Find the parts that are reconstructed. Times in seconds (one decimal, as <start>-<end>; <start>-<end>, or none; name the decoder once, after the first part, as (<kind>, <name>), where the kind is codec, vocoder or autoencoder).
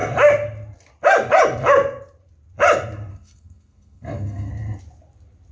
3.1-4.5 (codec, SNAC)